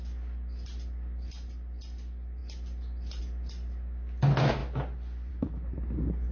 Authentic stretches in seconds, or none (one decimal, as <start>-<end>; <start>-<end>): 0.0-6.3